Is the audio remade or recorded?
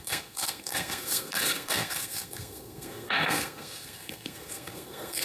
remade